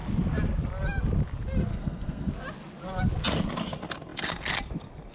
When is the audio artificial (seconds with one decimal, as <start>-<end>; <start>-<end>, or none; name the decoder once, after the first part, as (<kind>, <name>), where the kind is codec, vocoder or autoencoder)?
1.7-2.3 (codec, SNAC)